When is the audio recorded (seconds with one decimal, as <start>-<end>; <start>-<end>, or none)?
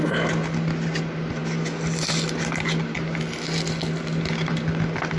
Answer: 0.0-5.2